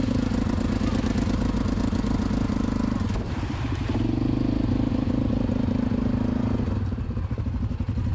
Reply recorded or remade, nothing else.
recorded